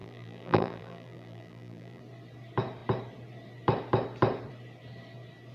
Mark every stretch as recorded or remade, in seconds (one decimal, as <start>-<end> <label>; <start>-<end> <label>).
0.0-2.0 remade; 2.0-5.5 recorded